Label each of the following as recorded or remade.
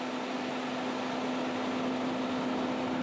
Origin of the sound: recorded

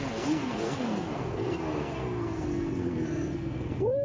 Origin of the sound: remade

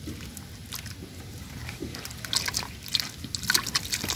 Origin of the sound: recorded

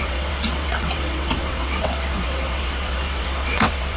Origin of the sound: remade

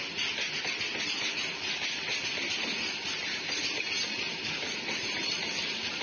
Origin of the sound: recorded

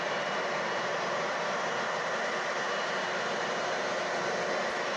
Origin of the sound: recorded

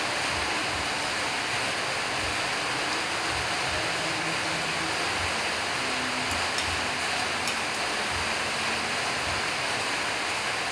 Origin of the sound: recorded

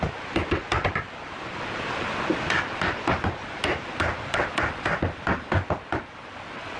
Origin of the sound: recorded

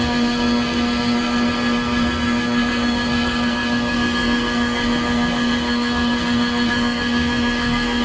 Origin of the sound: remade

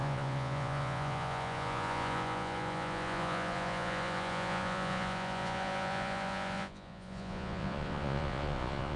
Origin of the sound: remade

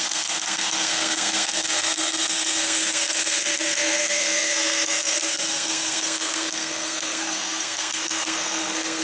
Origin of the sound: remade